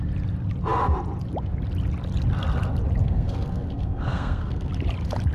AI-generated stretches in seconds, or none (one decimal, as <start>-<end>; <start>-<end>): 3.0-4.7